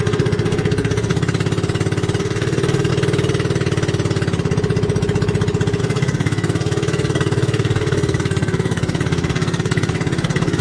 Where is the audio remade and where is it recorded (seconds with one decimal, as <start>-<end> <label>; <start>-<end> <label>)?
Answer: 0.0-1.1 remade; 1.1-2.2 recorded; 2.2-2.9 remade; 2.9-5.8 recorded; 5.8-10.6 remade